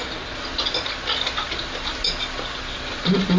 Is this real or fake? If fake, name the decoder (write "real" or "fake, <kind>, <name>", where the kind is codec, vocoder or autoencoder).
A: real